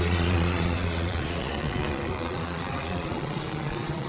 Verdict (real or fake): fake